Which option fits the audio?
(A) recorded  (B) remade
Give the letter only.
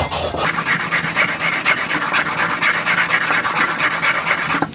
A